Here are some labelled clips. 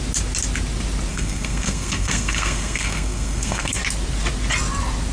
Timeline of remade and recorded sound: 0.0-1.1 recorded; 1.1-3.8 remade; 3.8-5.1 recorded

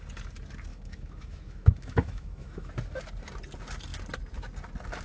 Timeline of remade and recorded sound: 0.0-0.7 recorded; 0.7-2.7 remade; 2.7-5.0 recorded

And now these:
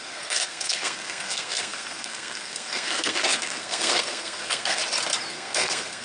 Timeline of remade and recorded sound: 0.0-4.8 remade; 4.8-5.3 recorded; 5.3-6.0 remade

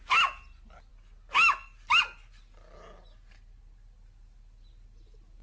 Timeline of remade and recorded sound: 0.0-5.4 recorded

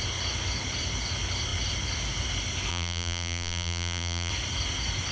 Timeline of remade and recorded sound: 0.0-2.7 recorded; 2.7-4.3 remade; 4.3-5.1 recorded